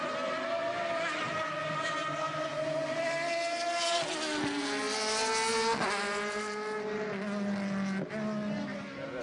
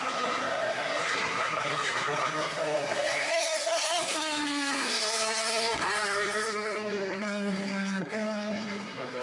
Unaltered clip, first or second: first